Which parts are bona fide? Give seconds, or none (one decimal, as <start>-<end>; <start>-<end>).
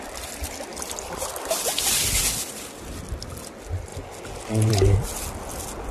0.0-5.9